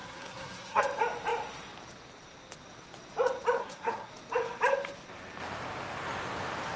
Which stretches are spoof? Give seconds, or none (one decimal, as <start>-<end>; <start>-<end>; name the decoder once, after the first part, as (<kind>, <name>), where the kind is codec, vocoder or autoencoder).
0.0-0.8 (codec, SNAC); 3.6-4.1